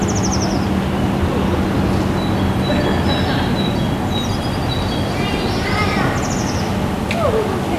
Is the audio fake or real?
real